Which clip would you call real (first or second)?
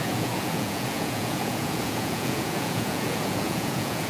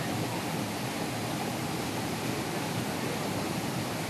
second